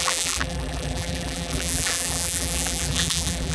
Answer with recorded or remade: remade